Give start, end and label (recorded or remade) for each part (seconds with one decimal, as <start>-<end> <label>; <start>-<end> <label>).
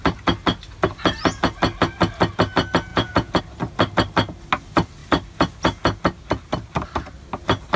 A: 0.0-2.9 recorded; 2.9-3.4 remade; 3.4-7.8 recorded